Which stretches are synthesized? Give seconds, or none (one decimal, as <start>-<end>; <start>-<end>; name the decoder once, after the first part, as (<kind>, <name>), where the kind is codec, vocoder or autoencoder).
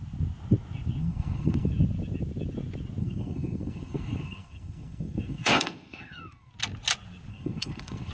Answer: 1.0-1.7 (codec, SNAC); 3.0-6.5; 7.3-8.1